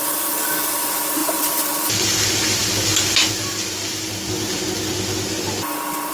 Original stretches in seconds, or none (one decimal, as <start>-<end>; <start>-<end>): 0.0-6.1